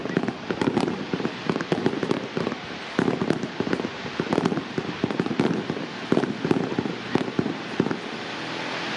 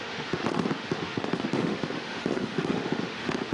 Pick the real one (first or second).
first